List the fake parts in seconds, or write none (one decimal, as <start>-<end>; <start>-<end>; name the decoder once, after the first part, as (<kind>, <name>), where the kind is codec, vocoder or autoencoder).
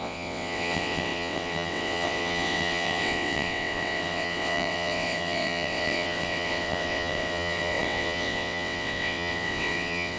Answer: 0.0-10.2 (vocoder, WaveNeXt)